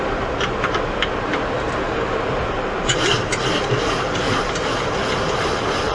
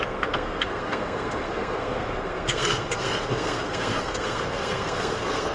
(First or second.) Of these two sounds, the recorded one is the first